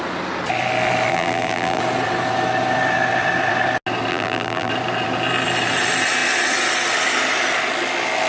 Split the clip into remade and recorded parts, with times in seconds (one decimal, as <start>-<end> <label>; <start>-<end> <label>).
0.0-1.1 recorded; 1.1-1.8 remade; 1.8-4.1 recorded; 4.1-4.7 remade; 4.7-8.3 recorded